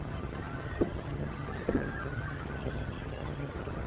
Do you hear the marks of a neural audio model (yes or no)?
yes